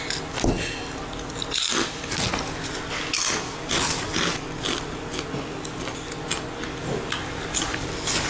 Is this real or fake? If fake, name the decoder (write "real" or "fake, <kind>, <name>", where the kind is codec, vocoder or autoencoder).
real